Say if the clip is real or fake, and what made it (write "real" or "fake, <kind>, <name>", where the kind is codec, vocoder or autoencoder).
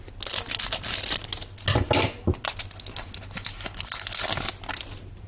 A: real